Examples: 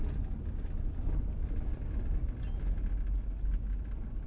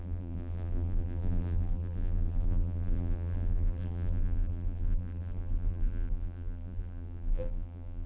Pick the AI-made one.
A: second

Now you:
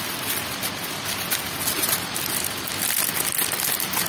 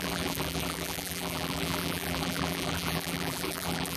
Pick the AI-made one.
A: second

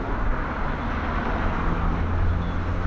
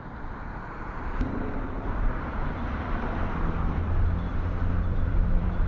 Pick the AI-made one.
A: second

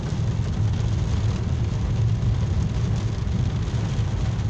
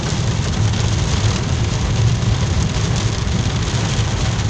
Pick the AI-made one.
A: second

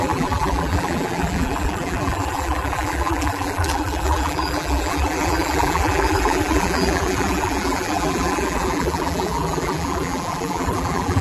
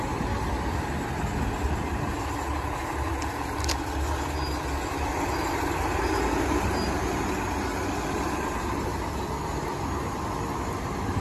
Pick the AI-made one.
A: first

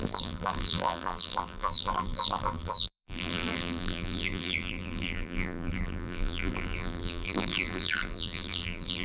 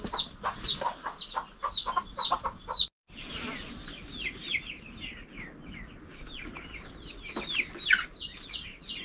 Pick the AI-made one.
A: first